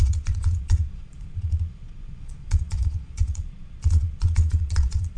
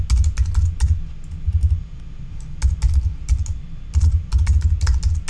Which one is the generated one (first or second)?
first